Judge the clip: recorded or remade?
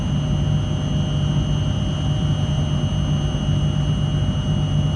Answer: recorded